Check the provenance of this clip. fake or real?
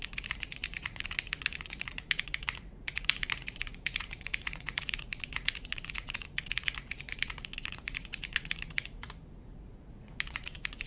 fake